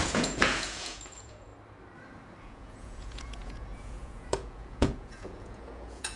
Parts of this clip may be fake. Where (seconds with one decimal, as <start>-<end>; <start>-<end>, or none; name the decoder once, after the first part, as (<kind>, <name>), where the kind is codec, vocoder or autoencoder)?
0.0-1.5 (vocoder, Vocos); 2.4-6.2